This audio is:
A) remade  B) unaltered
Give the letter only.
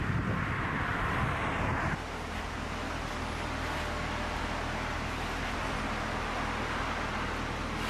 B